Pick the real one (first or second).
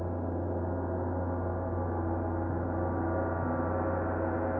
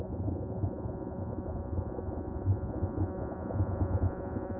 first